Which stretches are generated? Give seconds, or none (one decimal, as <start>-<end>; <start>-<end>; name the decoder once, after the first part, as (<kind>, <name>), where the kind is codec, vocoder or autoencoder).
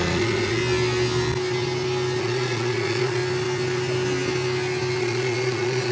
0.0-0.6 (vocoder, Vocos); 2.2-3.2; 5.0-5.9